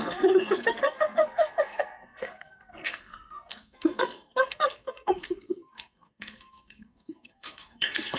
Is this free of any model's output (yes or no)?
no